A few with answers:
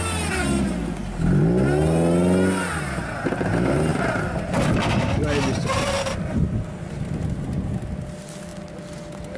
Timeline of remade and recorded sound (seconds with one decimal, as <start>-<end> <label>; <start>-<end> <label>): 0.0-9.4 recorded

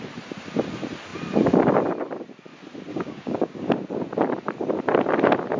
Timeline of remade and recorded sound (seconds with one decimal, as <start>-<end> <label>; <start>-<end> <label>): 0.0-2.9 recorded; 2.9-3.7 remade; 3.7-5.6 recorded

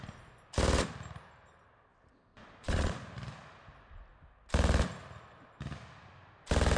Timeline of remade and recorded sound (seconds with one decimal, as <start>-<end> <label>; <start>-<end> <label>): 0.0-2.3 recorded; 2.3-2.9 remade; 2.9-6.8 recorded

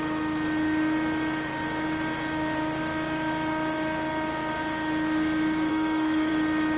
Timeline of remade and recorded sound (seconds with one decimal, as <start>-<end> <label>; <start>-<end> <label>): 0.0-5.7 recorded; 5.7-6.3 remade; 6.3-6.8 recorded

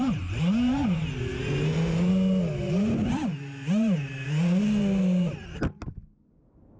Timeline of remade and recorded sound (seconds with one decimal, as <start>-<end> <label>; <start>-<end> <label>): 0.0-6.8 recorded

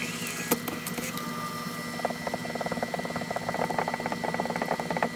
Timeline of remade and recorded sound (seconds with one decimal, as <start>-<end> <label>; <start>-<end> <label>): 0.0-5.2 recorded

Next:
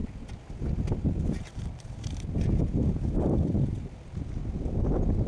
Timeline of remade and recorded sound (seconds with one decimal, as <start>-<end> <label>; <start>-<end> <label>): 0.0-5.3 recorded

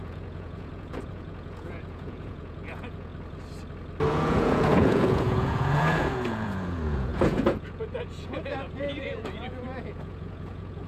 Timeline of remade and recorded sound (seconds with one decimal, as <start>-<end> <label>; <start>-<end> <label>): 0.0-3.1 remade; 3.1-4.1 recorded; 4.1-10.9 remade